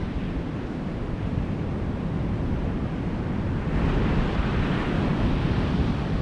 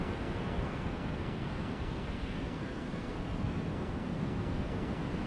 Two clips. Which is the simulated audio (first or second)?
second